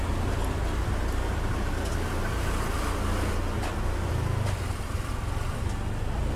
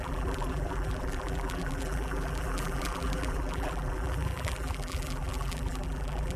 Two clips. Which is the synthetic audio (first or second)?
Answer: second